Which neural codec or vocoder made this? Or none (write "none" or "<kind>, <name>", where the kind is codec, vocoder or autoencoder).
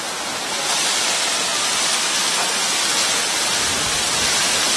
none